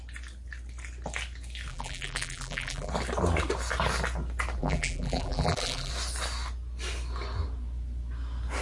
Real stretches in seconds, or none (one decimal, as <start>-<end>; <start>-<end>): 0.0-1.7; 2.9-4.6; 5.9-8.6